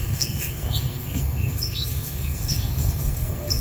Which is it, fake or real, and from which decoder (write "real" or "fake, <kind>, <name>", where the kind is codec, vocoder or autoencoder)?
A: fake, codec, SNAC